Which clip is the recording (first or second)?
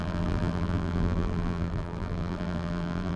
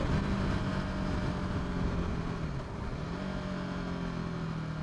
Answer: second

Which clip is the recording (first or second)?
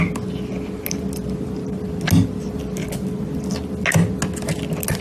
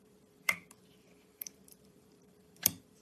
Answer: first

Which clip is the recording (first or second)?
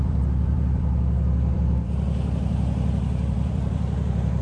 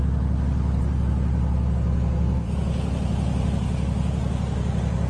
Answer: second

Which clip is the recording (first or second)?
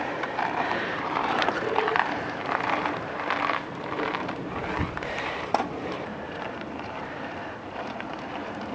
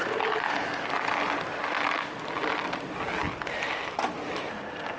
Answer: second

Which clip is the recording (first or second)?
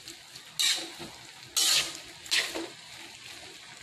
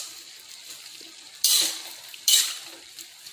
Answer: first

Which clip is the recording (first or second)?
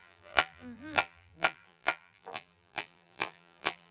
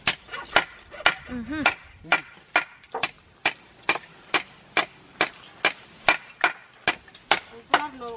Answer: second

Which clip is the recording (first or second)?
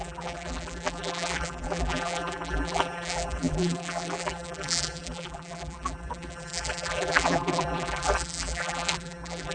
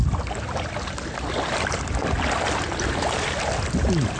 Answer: second